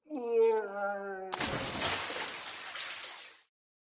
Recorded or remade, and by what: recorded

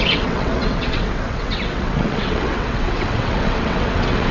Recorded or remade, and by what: remade, vocoder, WaveNeXt